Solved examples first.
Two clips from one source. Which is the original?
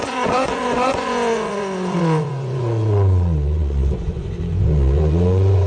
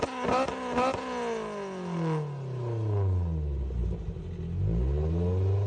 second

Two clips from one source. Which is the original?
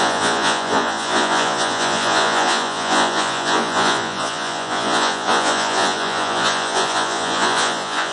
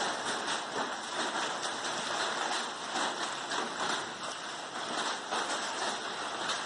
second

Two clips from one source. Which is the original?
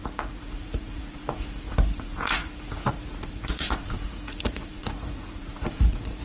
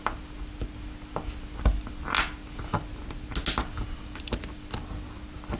second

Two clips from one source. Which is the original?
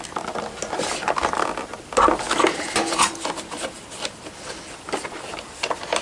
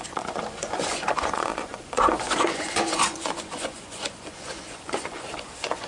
first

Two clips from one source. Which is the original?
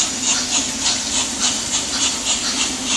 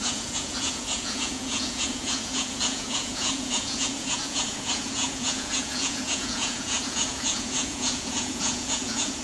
first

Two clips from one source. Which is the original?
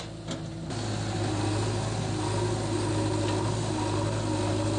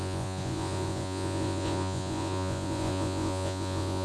first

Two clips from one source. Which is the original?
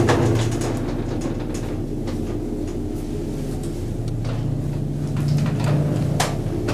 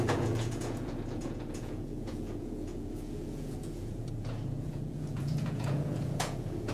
first